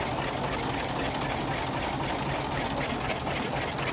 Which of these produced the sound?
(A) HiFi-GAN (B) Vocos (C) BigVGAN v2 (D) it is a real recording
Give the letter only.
D